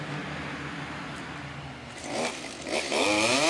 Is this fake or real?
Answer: real